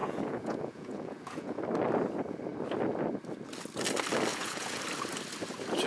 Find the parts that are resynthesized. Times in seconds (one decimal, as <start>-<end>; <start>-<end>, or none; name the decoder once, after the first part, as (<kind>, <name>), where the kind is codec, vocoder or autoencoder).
0.0-1.6 (vocoder, Vocos); 4.3-4.8